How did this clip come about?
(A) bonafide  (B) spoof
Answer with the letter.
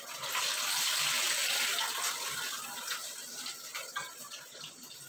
A